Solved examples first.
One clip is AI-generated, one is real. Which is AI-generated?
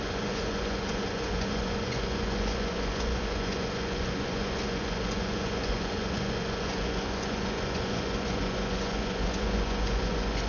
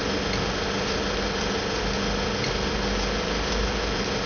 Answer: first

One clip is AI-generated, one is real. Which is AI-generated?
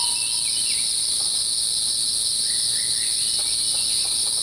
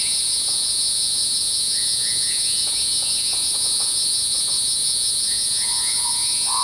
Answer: second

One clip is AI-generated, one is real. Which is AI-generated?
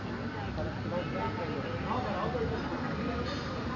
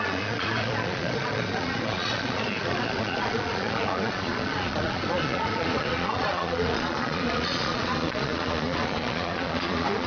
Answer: second